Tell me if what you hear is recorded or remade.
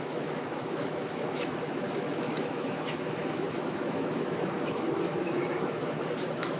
remade